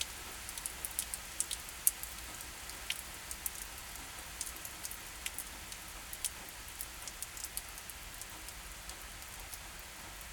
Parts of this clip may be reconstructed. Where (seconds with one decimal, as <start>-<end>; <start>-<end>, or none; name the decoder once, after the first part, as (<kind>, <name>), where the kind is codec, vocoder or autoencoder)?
none